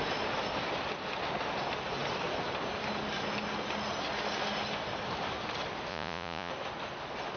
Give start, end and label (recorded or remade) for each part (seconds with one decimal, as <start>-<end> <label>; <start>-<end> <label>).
0.0-5.9 recorded; 5.9-6.5 remade; 6.5-7.4 recorded